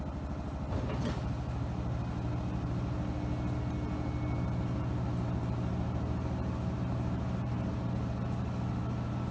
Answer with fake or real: real